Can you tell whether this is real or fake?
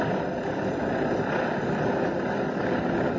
real